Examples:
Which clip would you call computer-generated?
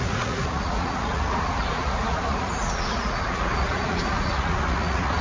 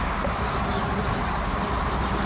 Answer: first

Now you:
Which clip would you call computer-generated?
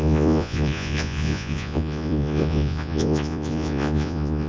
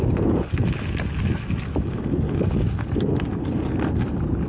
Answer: first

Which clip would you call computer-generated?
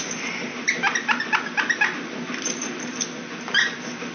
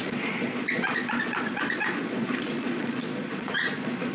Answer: second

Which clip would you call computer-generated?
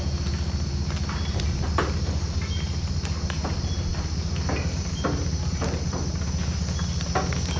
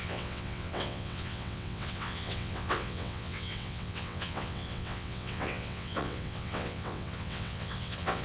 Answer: second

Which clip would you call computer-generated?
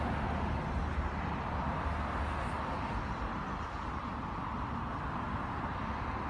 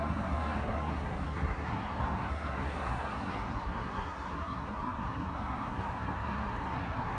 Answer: second